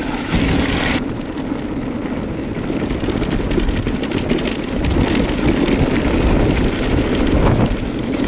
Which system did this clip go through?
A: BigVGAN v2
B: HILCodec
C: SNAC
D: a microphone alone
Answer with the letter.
D